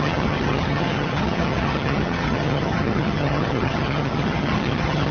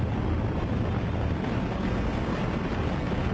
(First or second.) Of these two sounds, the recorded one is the second